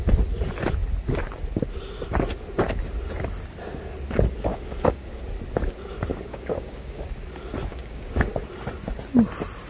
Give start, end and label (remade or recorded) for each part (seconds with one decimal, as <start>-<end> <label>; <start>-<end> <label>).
0.0-4.5 recorded; 4.5-5.2 remade; 5.2-6.1 recorded; 6.1-7.0 remade; 7.0-7.7 recorded; 7.7-8.3 remade; 8.3-9.7 recorded